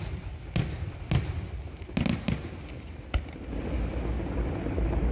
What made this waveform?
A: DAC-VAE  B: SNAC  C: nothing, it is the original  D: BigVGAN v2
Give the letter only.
C